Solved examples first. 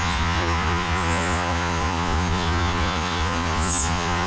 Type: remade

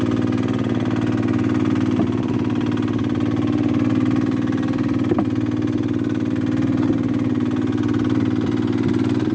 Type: recorded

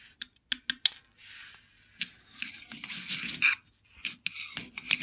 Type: recorded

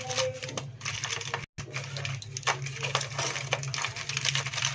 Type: recorded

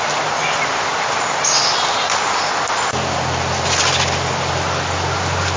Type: recorded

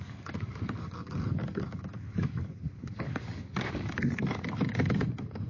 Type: remade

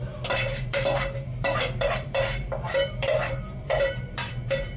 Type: remade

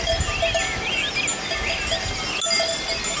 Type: recorded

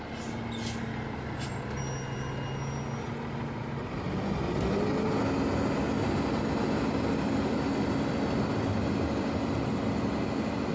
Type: recorded